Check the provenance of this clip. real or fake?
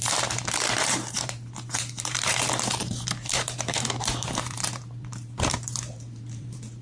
fake